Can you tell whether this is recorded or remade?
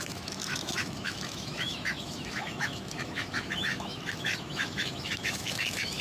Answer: remade